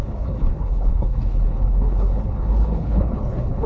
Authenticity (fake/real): fake